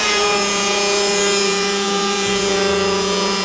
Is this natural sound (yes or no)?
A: no